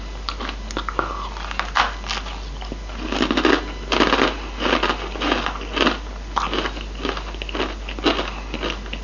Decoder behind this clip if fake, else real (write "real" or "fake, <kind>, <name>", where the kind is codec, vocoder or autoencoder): real